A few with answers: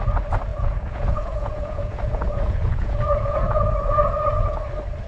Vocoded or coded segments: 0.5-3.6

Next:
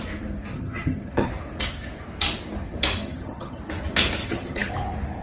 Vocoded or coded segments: 0.5-1.3; 3.0-3.6; 4.2-4.7